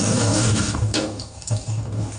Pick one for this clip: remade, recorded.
remade